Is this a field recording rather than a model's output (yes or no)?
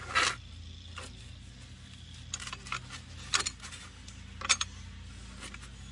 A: yes